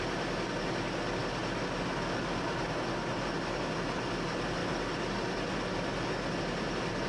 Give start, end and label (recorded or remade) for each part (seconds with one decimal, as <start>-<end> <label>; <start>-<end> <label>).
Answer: 0.0-7.1 recorded